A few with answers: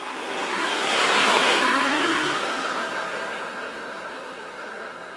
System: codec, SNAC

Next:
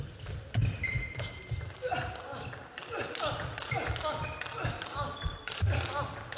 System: none